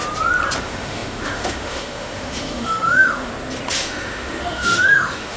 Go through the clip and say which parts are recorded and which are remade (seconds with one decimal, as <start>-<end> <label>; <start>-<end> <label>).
0.0-0.6 recorded; 0.6-3.3 remade; 3.3-3.8 recorded; 3.8-5.4 remade